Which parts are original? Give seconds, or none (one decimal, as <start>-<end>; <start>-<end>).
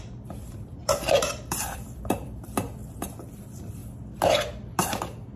3.8-5.4